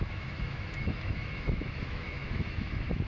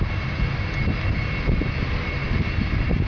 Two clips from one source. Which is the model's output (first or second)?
first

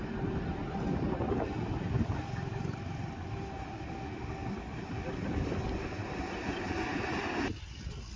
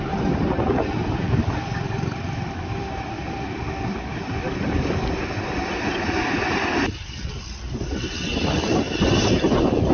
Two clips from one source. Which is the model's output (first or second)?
second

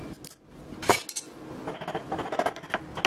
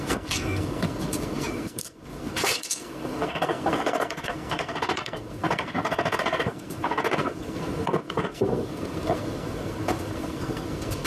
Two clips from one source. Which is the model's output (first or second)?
second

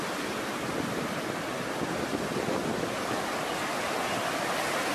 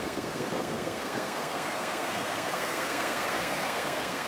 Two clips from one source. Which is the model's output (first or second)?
second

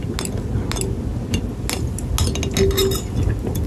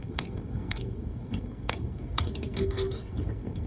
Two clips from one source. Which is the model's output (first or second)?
second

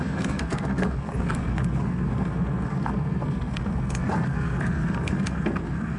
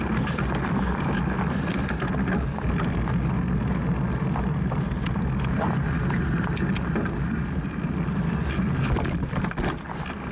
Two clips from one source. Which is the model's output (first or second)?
first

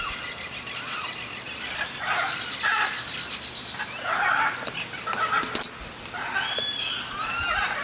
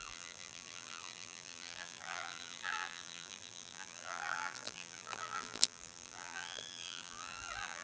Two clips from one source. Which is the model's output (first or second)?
second